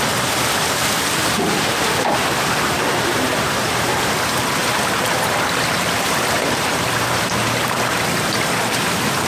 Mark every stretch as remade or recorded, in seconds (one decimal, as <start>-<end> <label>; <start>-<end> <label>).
0.0-9.3 remade